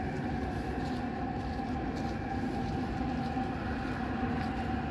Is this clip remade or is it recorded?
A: recorded